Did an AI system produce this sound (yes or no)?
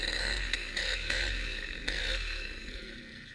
yes